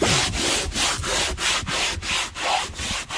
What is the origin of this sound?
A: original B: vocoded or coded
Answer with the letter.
A